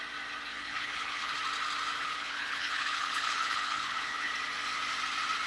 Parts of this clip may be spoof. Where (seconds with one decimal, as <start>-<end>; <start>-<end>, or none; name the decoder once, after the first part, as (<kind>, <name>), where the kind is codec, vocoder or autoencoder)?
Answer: 0.5-1.3 (codec, HILCodec); 2.0-4.3